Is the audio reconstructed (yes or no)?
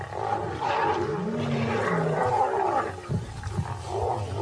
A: no